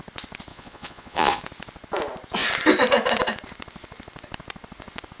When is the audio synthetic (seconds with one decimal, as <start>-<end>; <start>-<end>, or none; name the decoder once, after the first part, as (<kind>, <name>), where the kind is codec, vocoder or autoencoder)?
0.5-1.4 (vocoder, Vocos)